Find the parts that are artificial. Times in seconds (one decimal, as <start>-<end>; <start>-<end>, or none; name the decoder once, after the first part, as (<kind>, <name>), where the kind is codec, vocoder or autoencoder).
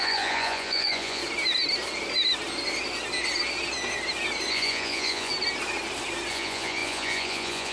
0.0-1.2 (vocoder, Vocos); 4.5-5.3; 6.3-7.7